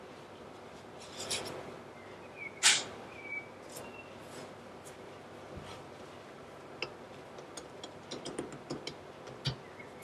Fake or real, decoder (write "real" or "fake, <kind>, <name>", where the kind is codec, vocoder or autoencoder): real